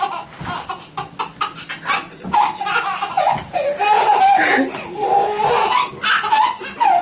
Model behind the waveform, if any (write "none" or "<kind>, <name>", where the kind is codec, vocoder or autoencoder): none